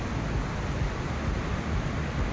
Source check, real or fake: real